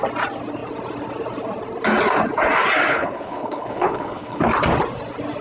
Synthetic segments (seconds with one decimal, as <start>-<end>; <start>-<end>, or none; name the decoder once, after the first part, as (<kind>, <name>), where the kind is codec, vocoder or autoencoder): 2.9-4.4 (codec, HILCodec)